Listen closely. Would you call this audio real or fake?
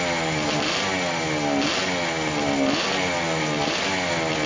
real